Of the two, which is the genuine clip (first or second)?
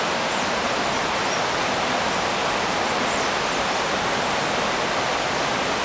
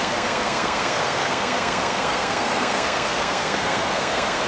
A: first